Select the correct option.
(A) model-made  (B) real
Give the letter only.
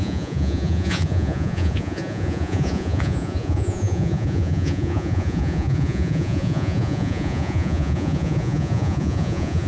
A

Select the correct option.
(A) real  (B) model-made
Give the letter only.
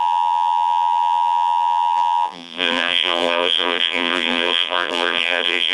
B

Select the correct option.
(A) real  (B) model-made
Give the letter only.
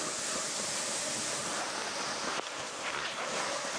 B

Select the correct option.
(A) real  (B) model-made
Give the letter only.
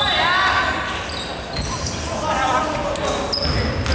A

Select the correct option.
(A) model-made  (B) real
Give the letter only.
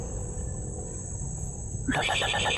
B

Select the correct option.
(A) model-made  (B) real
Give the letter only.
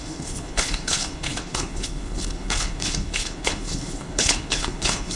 A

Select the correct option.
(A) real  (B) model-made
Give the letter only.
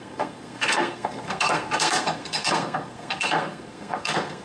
B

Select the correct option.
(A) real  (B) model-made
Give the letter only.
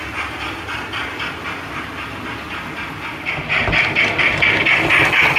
A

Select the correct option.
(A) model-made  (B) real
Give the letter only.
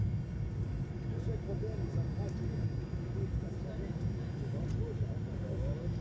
B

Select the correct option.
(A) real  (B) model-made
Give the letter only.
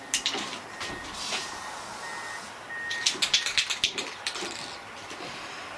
A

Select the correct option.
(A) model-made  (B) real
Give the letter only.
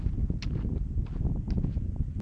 B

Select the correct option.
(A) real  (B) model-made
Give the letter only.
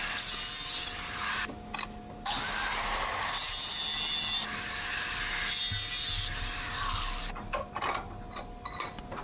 A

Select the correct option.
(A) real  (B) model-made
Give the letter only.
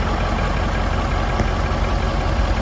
A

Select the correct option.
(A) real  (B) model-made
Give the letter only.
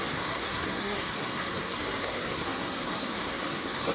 B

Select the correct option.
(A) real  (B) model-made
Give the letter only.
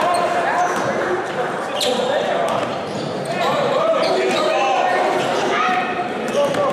B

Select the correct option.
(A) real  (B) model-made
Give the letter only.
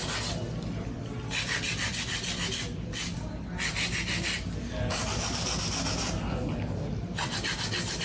A